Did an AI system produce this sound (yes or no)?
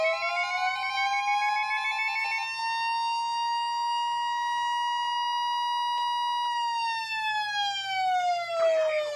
no